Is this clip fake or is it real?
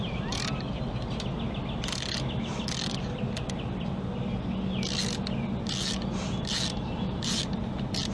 real